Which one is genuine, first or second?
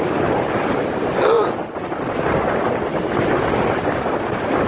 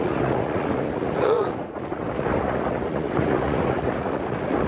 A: first